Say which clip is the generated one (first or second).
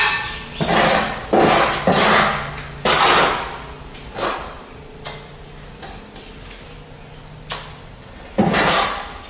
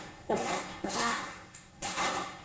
second